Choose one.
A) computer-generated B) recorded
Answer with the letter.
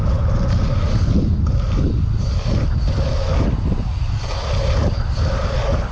B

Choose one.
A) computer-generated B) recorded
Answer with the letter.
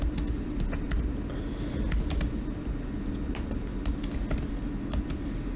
B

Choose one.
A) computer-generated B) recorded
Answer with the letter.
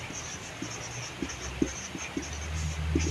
B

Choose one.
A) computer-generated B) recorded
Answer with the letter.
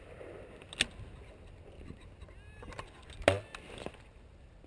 B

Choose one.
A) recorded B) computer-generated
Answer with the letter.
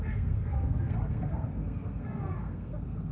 B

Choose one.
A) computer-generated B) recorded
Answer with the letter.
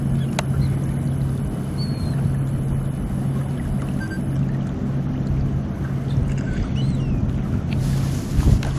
B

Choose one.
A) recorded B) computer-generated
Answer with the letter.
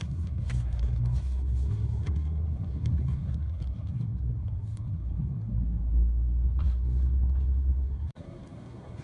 B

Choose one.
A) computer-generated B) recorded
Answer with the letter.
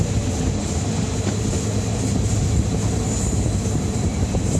B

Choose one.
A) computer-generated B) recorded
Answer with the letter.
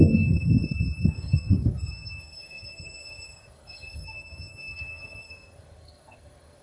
A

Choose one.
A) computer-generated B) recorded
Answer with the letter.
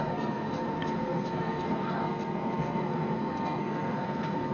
A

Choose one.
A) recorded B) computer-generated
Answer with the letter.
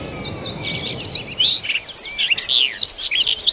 A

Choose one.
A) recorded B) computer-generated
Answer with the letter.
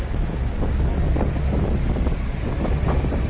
A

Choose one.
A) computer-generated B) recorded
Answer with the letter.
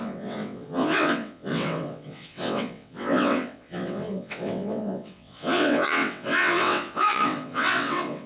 A